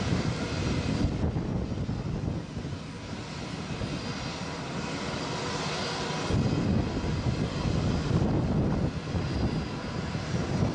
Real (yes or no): yes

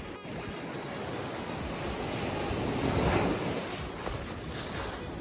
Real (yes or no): yes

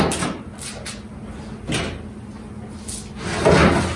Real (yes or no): yes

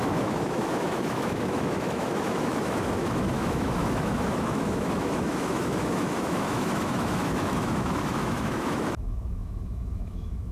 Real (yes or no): no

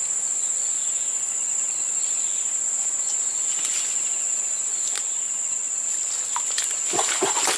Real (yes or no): yes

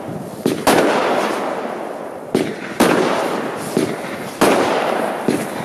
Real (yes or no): yes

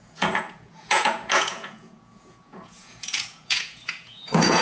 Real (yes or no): no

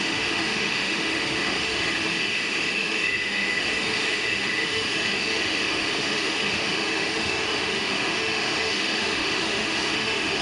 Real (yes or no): no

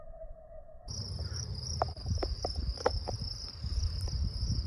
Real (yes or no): no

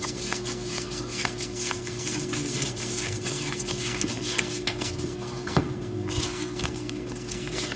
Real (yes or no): no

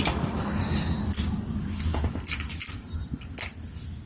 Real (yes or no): yes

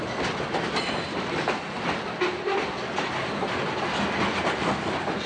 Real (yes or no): yes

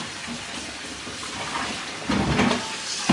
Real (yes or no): yes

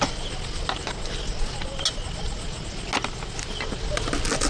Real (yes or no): yes